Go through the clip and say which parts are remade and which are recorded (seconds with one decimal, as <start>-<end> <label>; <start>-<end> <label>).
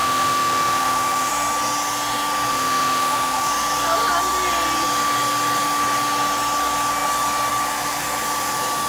0.0-1.3 remade; 1.3-2.5 recorded; 2.5-3.5 remade; 3.5-8.9 recorded